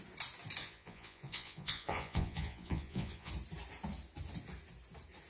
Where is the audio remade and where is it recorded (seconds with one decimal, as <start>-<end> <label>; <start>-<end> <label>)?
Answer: 0.0-0.6 recorded; 0.6-3.3 remade; 3.3-5.3 recorded